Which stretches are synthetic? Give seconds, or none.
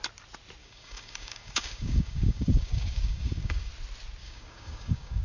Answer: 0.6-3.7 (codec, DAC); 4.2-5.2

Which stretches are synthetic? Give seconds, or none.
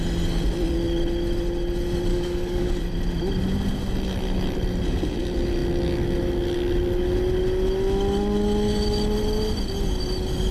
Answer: 2.1-2.8 (codec, DAC)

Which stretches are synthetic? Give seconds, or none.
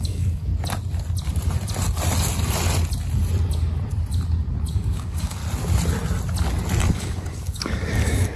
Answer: 0.0-0.5 (codec, DAC); 4.7-5.4; 6.9-8.4